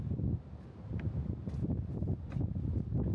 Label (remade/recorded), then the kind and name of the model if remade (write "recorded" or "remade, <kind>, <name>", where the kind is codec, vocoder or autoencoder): recorded